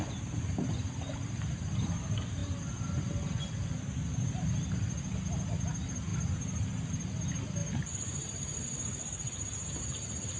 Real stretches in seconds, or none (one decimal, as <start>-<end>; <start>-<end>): 0.0-10.4